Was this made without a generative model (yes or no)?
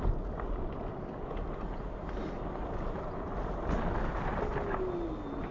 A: yes